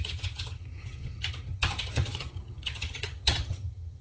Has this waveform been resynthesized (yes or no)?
yes